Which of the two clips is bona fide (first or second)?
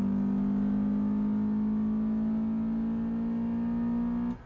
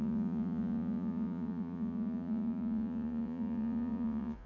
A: first